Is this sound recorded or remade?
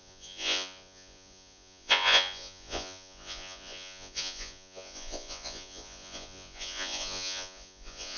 remade